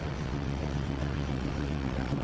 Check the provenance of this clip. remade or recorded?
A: remade